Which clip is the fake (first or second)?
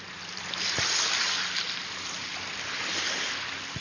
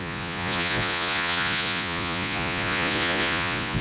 second